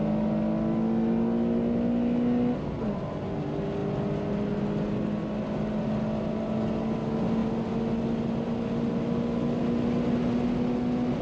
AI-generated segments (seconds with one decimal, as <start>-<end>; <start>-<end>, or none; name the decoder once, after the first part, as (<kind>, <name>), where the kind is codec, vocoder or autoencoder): none